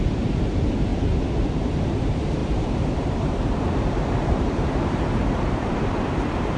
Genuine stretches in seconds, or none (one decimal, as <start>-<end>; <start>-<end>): none